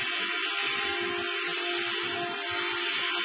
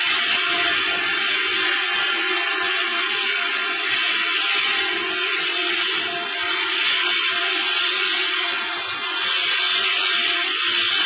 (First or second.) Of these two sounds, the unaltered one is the first